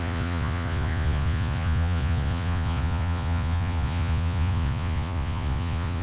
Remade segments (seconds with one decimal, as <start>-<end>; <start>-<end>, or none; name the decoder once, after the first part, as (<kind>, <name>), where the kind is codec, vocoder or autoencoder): 0.0-6.0 (vocoder, Vocos)